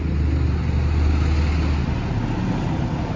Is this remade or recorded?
recorded